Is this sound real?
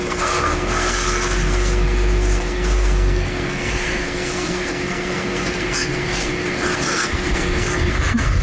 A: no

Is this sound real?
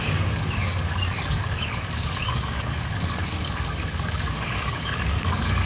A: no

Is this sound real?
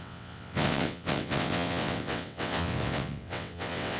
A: no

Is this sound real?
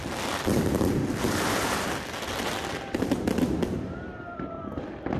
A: no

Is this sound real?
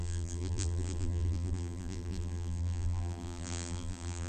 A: no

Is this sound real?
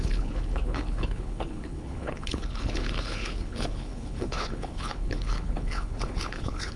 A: no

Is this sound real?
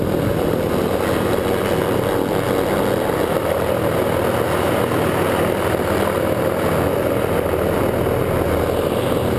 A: yes